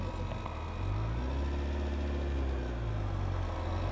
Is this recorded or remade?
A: recorded